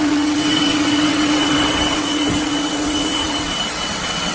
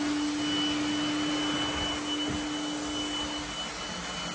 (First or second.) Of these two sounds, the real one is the second